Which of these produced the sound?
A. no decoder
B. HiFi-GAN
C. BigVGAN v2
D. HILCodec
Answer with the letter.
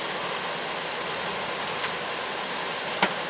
A